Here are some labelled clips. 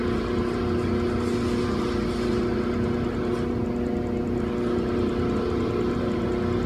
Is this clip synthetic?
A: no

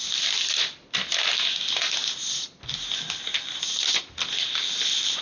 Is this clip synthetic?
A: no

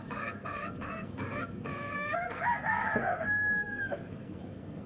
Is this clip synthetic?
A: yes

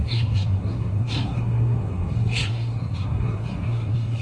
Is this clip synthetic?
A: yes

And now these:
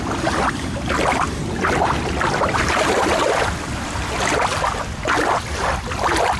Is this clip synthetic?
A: no